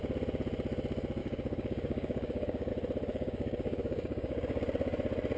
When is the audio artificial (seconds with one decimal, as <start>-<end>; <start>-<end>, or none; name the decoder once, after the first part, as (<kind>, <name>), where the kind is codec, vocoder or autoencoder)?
1.2-2.7 (codec, DAC); 3.1-4.6